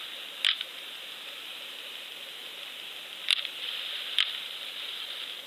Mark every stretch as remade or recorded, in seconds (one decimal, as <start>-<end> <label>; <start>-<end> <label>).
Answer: 0.0-5.5 recorded